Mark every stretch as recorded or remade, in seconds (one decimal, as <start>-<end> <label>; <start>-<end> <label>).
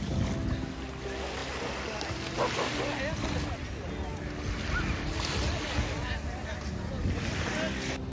0.0-8.1 recorded